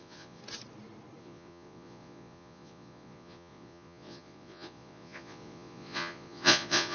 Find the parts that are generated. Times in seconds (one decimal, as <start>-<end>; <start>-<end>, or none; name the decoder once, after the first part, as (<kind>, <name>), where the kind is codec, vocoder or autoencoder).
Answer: 0.0-0.4 (vocoder, Vocos); 1.2-6.9